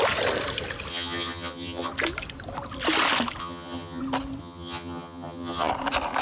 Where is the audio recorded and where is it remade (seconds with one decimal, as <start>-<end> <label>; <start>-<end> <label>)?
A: 0.0-0.9 recorded; 0.9-1.9 remade; 1.9-3.4 recorded; 3.4-4.0 remade; 4.0-4.4 recorded; 4.4-5.7 remade; 5.7-6.2 recorded